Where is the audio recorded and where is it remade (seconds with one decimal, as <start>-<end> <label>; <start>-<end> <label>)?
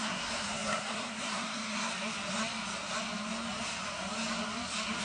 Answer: 0.0-1.9 remade; 1.9-5.0 recorded